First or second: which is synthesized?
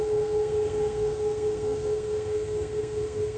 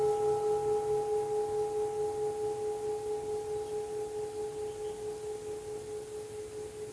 first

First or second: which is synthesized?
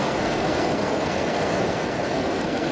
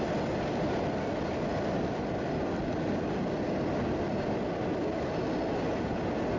first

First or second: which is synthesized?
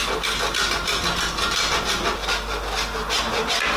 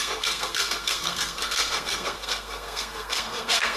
second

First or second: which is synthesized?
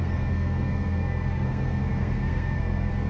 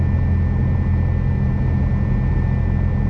first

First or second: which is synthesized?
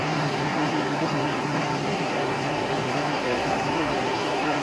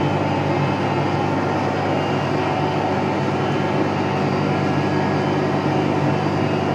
first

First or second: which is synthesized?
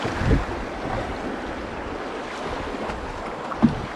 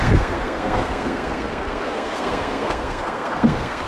second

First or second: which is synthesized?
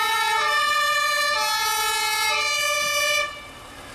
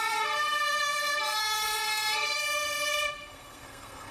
second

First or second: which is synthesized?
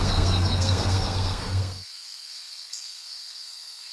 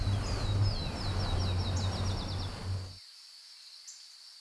first